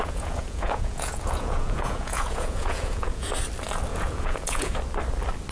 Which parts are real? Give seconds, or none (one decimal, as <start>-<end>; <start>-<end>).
3.3-3.9; 4.8-5.5